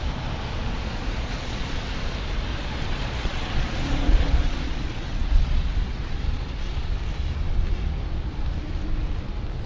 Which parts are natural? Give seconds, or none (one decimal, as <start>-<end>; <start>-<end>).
0.0-0.8; 1.6-2.5; 6.9-9.7